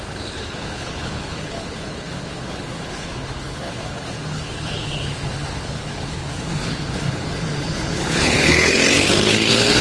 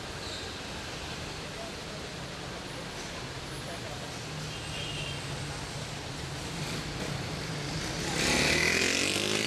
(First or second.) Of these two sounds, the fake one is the first